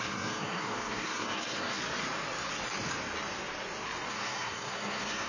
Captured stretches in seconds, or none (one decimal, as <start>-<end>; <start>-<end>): 1.8-4.1